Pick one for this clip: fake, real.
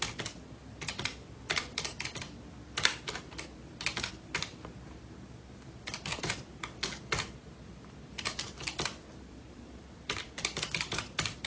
real